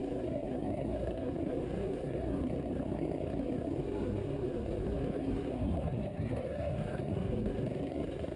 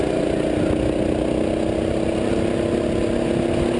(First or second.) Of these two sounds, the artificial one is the first